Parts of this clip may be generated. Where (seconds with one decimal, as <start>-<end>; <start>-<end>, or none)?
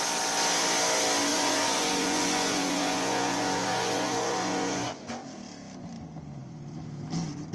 1.3-5.1